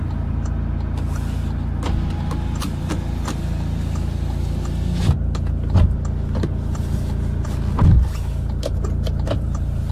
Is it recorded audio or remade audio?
recorded